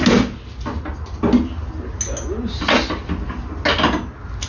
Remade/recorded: recorded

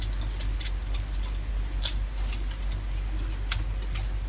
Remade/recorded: recorded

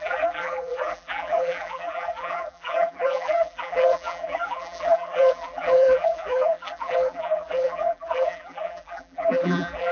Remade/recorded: remade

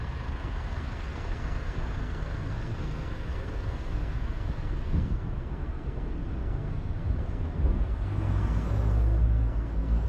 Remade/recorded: remade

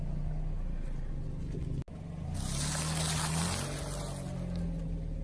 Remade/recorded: recorded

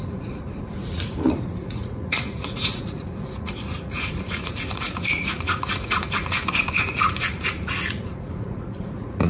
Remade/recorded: remade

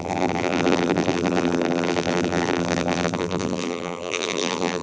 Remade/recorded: remade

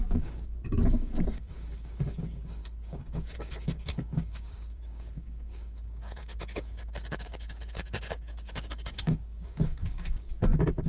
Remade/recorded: remade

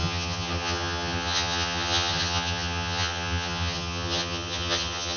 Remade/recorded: remade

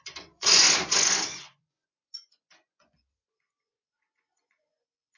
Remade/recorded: remade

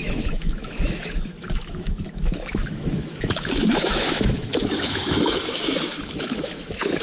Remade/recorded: remade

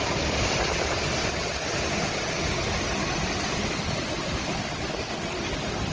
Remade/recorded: recorded